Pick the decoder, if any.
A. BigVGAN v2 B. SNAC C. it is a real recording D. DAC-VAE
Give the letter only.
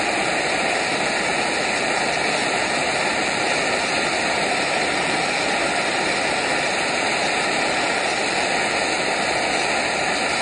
C